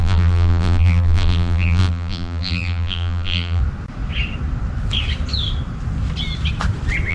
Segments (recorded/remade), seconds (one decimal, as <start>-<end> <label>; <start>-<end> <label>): 0.0-3.6 remade; 3.6-7.1 recorded